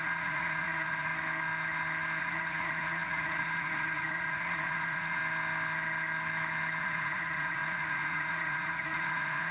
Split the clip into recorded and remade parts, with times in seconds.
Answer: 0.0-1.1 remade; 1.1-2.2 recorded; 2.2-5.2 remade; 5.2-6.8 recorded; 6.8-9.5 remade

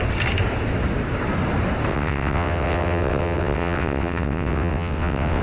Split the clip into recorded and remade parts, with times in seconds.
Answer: 0.0-1.9 recorded; 1.9-5.4 remade

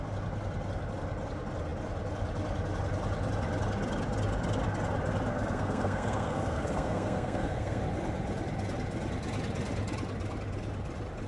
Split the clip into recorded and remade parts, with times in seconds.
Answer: 0.0-5.3 recorded; 5.3-7.8 remade; 7.8-11.3 recorded

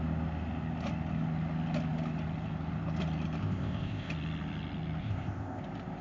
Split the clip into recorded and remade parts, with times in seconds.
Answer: 0.0-3.4 recorded; 3.4-4.1 remade; 4.1-5.0 recorded; 5.0-5.6 remade; 5.6-6.0 recorded

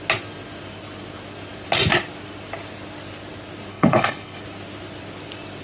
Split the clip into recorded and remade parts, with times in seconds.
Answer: 0.0-3.7 recorded; 3.7-4.4 remade; 4.4-5.6 recorded